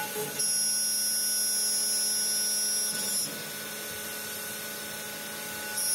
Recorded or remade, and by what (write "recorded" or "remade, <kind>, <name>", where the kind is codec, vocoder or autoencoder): recorded